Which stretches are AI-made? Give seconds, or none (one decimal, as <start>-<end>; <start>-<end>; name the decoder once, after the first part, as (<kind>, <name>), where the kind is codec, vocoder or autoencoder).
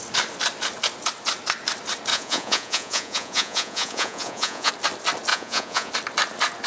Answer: 2.1-4.7 (vocoder, Vocos); 5.3-5.9